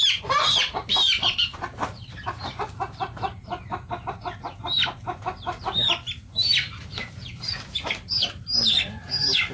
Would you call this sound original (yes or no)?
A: no